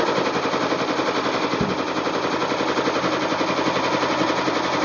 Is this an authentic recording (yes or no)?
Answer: yes